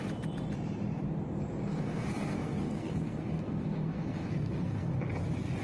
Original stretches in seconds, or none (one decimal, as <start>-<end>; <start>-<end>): 0.0-1.7; 4.9-5.6